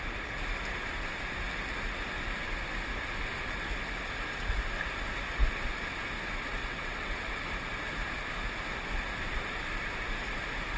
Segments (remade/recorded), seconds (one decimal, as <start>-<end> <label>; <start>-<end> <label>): 0.0-6.6 recorded; 6.6-7.4 remade; 7.4-10.8 recorded